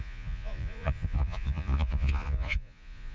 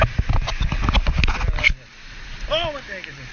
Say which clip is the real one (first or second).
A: second